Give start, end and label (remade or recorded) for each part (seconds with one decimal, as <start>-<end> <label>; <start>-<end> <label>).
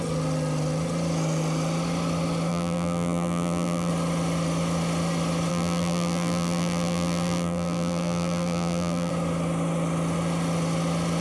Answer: 0.0-2.5 recorded; 2.5-3.9 remade; 3.9-5.5 recorded; 5.5-9.1 remade; 9.1-11.2 recorded